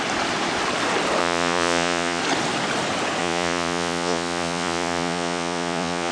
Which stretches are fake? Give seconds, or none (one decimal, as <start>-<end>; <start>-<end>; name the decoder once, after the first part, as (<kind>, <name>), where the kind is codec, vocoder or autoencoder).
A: 1.2-2.2 (vocoder, Vocos); 3.2-6.1